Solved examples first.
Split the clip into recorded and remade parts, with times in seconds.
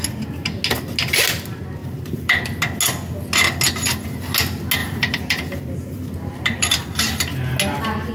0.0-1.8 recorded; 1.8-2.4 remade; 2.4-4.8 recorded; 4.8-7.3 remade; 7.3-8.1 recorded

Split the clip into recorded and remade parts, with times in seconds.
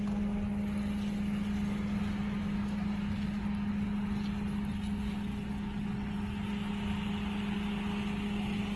0.0-8.8 recorded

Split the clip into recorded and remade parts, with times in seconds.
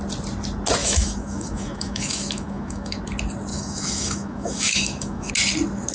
0.0-0.8 recorded; 0.8-3.0 remade; 3.0-3.5 recorded; 3.5-5.3 remade; 5.3-5.9 recorded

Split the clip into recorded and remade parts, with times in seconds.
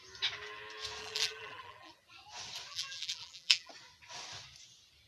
0.0-1.0 recorded; 1.0-1.9 remade; 1.9-2.7 recorded; 2.7-3.7 remade; 3.7-5.1 recorded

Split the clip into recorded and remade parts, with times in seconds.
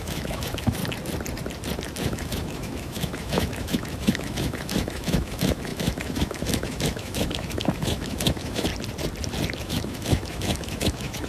0.0-0.8 remade; 0.8-2.0 recorded; 2.0-8.7 remade; 8.7-9.6 recorded; 9.6-11.3 remade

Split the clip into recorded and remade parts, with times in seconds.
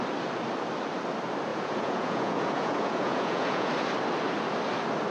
0.0-1.5 recorded; 1.5-3.7 remade; 3.7-5.1 recorded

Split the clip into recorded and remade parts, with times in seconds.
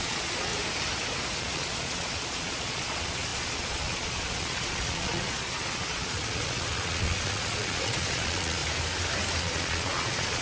0.0-0.5 remade; 0.5-1.4 recorded; 1.4-8.6 remade; 8.6-9.4 recorded; 9.4-10.4 remade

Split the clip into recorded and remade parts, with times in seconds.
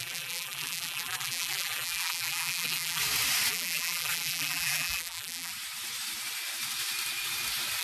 0.0-3.0 remade; 3.0-3.5 recorded; 3.5-5.5 remade; 5.5-7.8 recorded